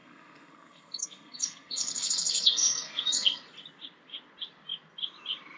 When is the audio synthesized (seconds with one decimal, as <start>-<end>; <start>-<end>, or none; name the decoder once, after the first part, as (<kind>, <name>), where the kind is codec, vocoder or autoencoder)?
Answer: 0.0-3.4 (codec, SNAC)